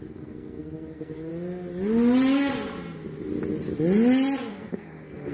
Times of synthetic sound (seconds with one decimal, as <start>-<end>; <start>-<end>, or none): 0.0-1.3; 4.5-5.3